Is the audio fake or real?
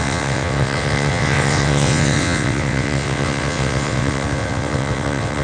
fake